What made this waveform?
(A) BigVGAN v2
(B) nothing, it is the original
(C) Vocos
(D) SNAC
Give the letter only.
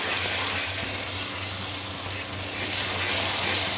B